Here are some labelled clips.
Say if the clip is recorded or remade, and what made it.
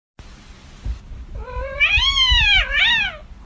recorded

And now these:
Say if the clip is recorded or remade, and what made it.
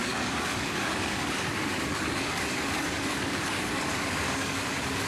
remade, codec, DAC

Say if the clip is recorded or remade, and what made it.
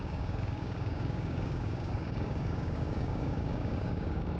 remade, codec, DAC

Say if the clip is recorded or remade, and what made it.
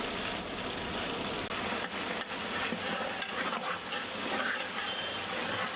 recorded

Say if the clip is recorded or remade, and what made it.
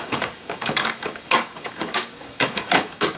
remade, codec, DAC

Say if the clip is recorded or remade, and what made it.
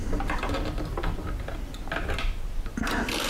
recorded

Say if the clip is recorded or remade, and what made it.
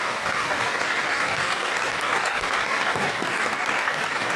remade, codec, DAC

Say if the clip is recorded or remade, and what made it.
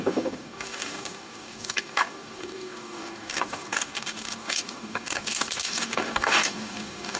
remade, codec, DAC